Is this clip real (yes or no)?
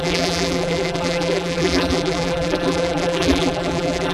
no